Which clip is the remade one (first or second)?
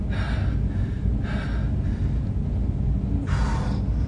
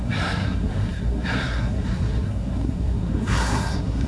second